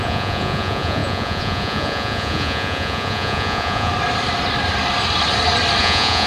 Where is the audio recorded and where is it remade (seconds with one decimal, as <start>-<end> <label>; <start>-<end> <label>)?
0.0-3.9 remade; 3.9-5.8 recorded; 5.8-6.3 remade